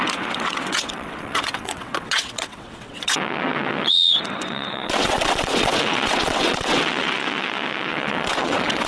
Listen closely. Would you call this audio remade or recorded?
remade